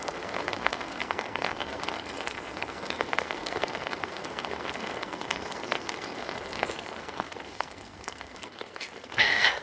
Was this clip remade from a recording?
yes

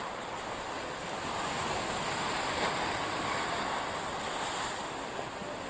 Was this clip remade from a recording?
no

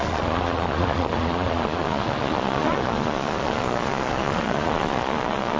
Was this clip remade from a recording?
yes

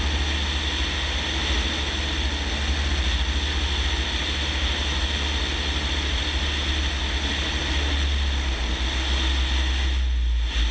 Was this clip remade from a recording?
no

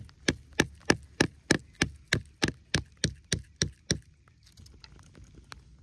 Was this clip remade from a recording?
no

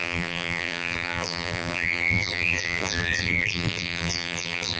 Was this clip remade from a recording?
yes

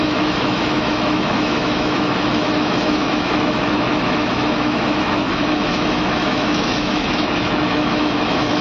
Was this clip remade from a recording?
yes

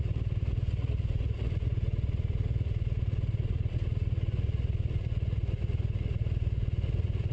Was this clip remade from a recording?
yes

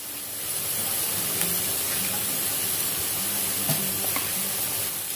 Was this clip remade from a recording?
yes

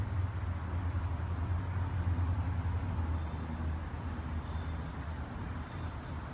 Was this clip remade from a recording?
no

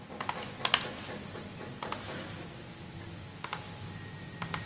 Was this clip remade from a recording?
no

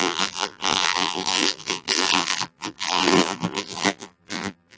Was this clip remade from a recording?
yes